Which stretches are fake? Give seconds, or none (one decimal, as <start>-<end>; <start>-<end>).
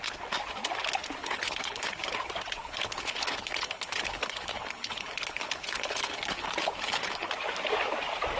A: 1.2-2.0; 2.6-7.3